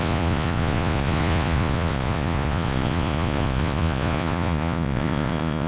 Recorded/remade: remade